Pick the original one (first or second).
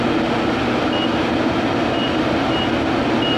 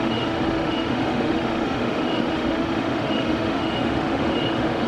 first